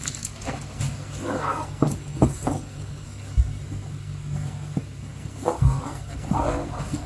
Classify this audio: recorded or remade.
remade